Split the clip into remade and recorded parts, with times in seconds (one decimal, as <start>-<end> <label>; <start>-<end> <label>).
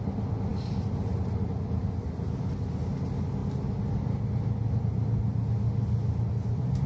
0.0-6.9 recorded